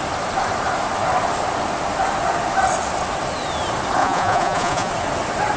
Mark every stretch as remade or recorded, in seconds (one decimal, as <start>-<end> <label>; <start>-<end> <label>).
0.0-4.0 recorded; 4.0-4.9 remade; 4.9-5.6 recorded